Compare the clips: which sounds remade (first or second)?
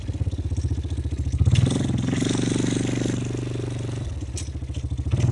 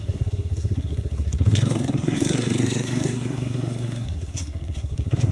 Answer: second